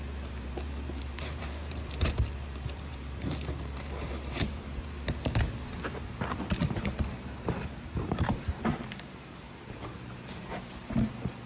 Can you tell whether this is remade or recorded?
remade